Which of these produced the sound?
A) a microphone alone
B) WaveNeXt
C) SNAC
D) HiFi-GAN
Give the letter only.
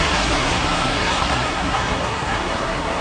C